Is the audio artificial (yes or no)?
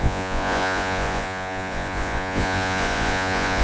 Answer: yes